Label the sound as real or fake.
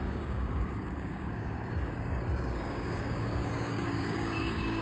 fake